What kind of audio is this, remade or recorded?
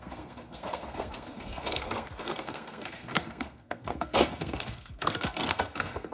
remade